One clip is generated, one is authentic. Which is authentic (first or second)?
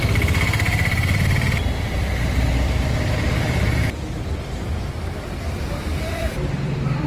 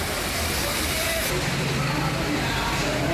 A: second